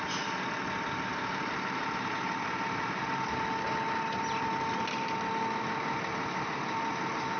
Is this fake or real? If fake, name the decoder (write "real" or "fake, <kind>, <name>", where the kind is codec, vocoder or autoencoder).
real